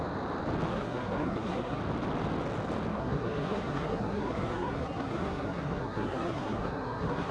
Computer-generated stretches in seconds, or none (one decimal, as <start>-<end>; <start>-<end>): 0.7-1.8; 2.9-7.3